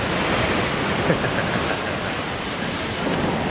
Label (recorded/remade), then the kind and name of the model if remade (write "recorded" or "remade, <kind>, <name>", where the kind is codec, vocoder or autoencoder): recorded